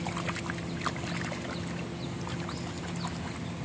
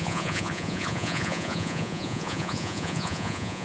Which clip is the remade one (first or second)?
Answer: second